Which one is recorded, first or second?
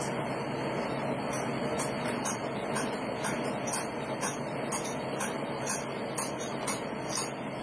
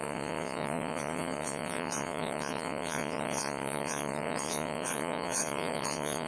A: first